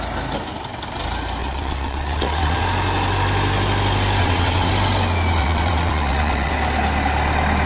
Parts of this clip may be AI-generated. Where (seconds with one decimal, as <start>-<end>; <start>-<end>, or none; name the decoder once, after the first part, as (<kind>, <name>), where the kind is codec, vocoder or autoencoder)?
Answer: 1.4-2.6 (vocoder, WaveNeXt); 4.2-4.7; 5.4-6.5